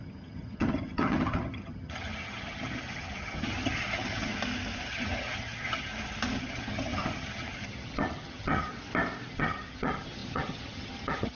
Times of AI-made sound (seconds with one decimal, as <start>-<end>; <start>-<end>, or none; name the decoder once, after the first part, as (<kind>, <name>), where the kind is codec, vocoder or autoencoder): 0.0-4.3 (vocoder, HiFi-GAN); 4.8-5.9; 6.4-8.7; 9.3-11.3